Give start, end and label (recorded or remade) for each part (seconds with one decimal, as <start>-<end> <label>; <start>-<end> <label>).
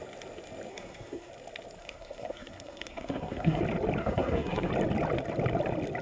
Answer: 0.0-0.7 recorded; 0.7-1.3 remade; 1.3-1.8 recorded; 1.8-3.6 remade; 3.6-4.0 recorded; 4.0-4.7 remade; 4.7-6.0 recorded